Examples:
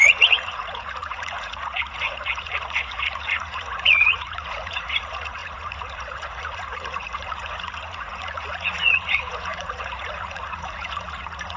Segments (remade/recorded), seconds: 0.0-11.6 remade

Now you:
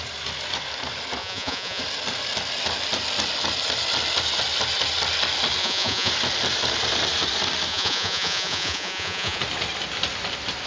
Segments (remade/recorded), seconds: 0.0-1.2 recorded; 1.2-1.8 remade; 1.8-5.6 recorded; 5.6-6.1 remade; 6.1-7.7 recorded; 7.7-9.4 remade; 9.4-10.7 recorded

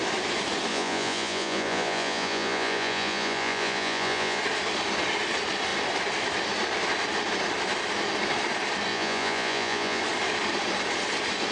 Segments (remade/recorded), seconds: 0.0-0.7 recorded; 0.7-4.4 remade; 4.4-8.9 recorded; 8.9-10.0 remade; 10.0-11.5 recorded

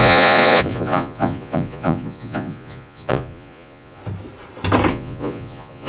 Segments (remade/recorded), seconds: 0.0-4.0 remade; 4.0-4.9 recorded; 4.9-5.9 remade

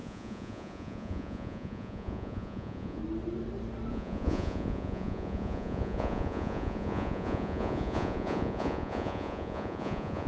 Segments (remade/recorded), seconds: 0.0-3.0 remade; 3.0-3.9 recorded; 3.9-10.3 remade

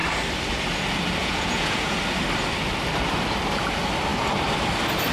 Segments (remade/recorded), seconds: 0.0-1.2 recorded; 1.2-2.0 remade; 2.0-5.1 recorded

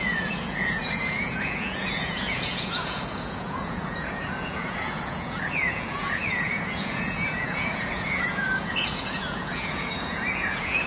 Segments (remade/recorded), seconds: 0.0-10.9 remade